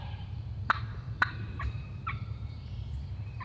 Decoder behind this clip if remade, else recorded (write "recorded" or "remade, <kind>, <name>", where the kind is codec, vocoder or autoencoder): remade, vocoder, BigVGAN v2